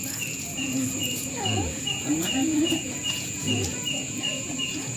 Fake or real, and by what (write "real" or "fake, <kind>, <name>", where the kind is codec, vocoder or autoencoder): fake, vocoder, Vocos